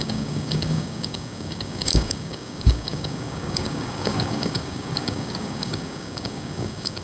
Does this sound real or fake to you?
fake